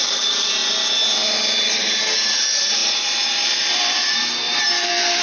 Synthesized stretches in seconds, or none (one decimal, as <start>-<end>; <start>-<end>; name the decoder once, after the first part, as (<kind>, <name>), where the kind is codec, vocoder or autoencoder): 0.0-0.6 (vocoder, BigVGAN v2); 1.7-5.2